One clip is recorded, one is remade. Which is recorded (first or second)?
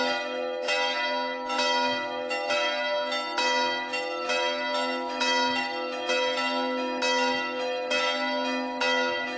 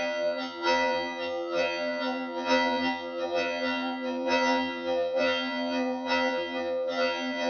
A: first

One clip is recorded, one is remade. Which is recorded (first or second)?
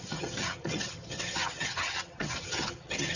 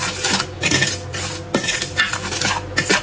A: second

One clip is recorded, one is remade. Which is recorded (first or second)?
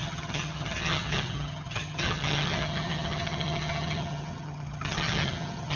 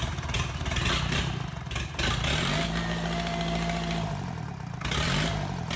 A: second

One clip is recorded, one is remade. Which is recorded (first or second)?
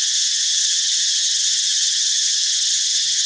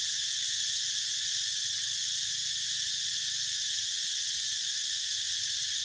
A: second